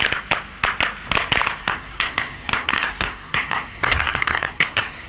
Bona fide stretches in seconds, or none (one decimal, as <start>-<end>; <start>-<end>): 0.0-1.6